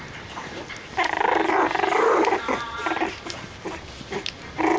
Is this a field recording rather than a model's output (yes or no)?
yes